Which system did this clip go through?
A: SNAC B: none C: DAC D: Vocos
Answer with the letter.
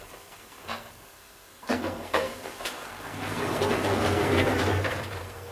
A